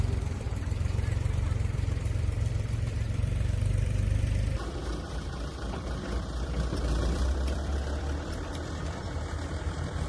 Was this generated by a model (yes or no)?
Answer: yes